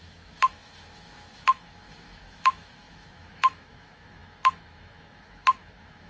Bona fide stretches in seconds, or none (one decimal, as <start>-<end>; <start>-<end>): none